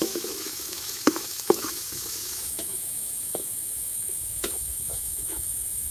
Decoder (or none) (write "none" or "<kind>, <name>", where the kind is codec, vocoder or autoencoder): autoencoder, DAC-VAE